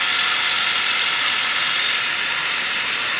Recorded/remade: remade